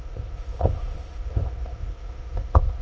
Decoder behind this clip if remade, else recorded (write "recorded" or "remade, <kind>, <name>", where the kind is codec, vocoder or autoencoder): remade, codec, ZipCodec